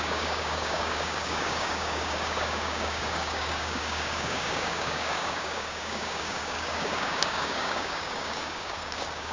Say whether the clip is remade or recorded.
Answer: remade